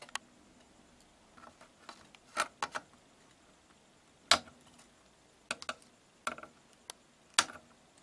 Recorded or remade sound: recorded